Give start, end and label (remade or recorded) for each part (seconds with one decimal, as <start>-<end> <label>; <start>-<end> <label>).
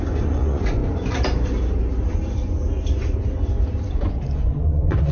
0.0-0.8 remade; 0.8-3.9 recorded; 3.9-5.1 remade